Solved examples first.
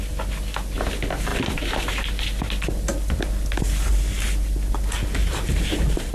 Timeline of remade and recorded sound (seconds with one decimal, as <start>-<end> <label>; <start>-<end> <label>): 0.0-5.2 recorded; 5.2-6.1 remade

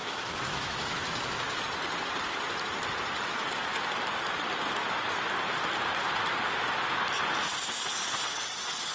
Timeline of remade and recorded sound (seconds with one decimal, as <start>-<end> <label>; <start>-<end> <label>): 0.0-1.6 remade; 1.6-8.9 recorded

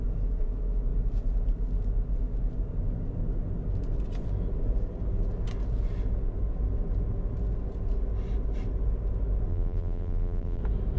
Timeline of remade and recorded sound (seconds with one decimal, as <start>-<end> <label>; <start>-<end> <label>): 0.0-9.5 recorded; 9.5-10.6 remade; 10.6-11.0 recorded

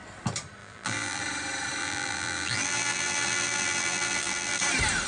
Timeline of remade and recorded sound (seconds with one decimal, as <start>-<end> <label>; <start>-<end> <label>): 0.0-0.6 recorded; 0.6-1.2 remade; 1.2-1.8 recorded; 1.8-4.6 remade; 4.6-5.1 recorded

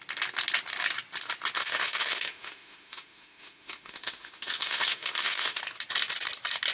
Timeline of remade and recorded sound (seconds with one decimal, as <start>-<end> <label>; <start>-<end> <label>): 0.0-1.6 recorded; 1.6-5.6 remade; 5.6-6.7 recorded

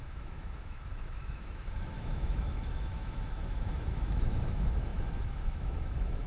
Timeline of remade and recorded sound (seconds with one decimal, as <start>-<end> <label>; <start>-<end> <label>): 0.0-6.3 remade